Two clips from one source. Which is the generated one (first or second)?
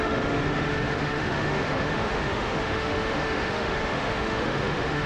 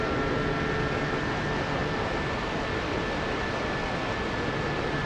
first